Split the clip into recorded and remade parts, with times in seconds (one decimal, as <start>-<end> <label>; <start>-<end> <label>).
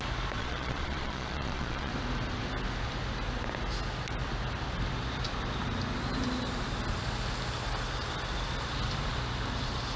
0.0-0.4 recorded; 0.4-1.9 remade; 1.9-10.0 recorded